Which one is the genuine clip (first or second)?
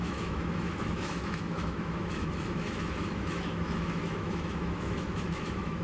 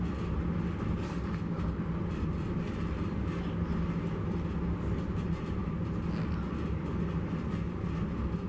second